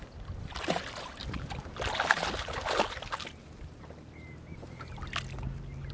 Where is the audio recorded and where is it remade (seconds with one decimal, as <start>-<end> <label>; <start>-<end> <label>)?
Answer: 0.0-5.9 recorded